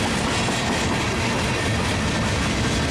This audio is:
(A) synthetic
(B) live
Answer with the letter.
B